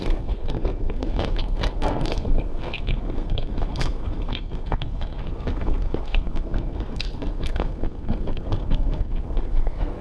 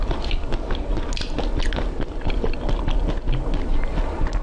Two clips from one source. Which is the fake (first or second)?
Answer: first